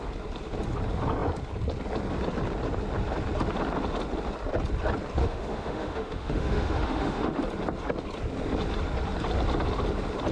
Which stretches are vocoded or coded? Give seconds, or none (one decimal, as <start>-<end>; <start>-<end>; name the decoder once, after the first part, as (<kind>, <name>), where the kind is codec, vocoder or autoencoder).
5.2-7.4 (autoencoder, DAC-VAE)